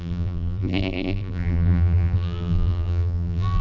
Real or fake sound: fake